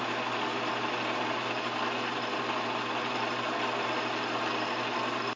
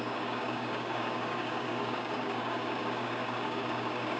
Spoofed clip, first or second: second